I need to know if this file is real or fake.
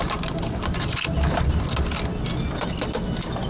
real